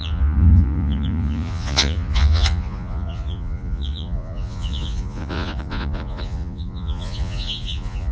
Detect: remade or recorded remade